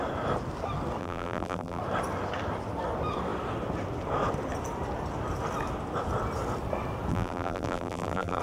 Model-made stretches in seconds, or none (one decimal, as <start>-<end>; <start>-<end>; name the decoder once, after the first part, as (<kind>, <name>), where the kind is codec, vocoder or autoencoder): 1.0-1.8 (vocoder, BigVGAN v2); 7.1-8.4